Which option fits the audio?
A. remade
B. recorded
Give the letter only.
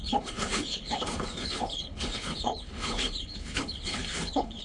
A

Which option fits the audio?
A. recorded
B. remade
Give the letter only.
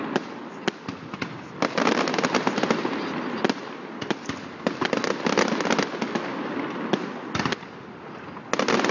A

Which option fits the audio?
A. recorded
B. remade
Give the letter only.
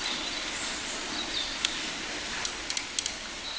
A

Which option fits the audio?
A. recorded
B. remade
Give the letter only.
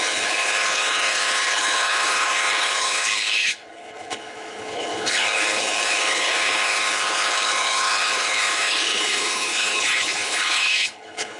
B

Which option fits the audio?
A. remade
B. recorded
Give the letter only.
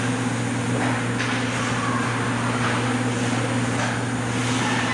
B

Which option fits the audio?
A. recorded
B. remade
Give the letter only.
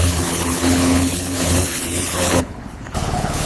B